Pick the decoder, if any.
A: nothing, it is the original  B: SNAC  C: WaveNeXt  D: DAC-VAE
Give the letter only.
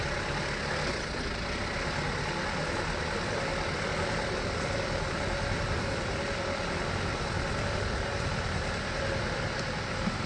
A